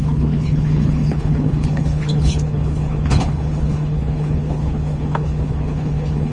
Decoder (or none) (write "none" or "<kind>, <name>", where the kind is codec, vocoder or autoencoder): codec, HILCodec